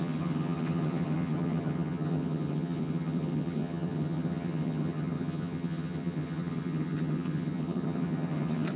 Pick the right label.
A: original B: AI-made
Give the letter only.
B